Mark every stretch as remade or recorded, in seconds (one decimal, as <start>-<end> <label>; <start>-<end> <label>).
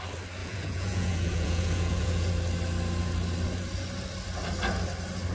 0.0-0.4 recorded; 0.4-2.3 remade; 2.3-5.3 recorded